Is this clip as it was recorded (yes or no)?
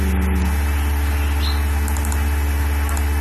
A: yes